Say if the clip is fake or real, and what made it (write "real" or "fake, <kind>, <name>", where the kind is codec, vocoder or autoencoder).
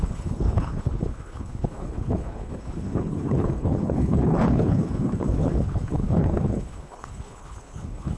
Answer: fake, codec, HILCodec